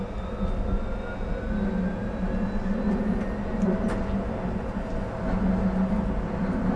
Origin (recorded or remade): recorded